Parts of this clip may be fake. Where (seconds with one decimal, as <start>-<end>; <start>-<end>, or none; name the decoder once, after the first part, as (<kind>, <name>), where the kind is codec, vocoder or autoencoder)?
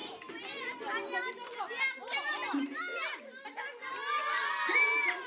none